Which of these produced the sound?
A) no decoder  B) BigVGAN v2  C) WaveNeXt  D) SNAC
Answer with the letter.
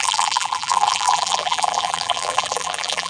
B